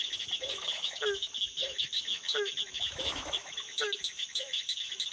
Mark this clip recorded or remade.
remade